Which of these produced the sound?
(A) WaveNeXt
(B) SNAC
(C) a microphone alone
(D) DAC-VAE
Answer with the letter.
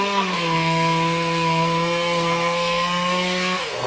B